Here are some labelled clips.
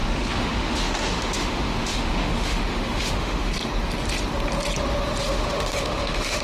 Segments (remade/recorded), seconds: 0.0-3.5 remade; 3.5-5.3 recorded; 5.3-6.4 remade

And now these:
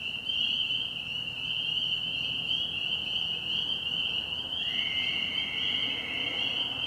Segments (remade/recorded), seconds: 0.0-6.9 recorded

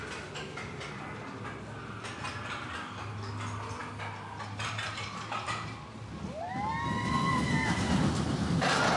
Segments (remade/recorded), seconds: 0.0-9.0 recorded

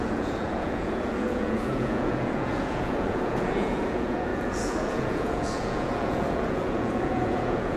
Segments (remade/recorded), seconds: 0.0-7.8 remade

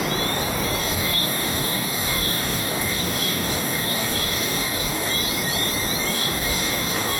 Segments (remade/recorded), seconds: 0.0-0.8 recorded; 0.8-5.1 remade; 5.1-6.1 recorded; 6.1-7.2 remade

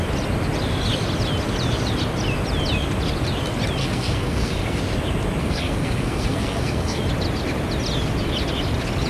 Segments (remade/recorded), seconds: 0.0-3.8 recorded; 3.8-4.8 remade; 4.8-5.4 recorded; 5.4-7.0 remade; 7.0-9.1 recorded

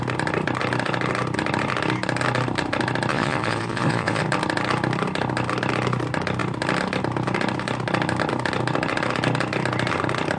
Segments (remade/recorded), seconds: 0.0-3.1 recorded; 3.1-4.2 remade; 4.2-10.4 recorded

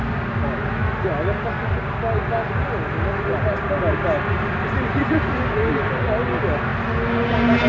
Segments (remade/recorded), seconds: 0.0-7.7 recorded